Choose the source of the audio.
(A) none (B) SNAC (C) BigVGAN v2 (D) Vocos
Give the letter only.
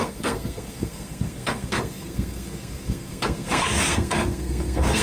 B